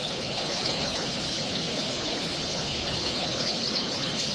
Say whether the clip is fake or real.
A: fake